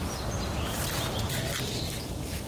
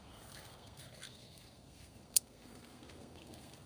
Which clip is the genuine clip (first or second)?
first